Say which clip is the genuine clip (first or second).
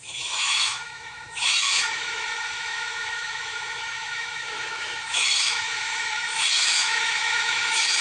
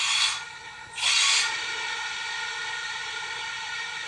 second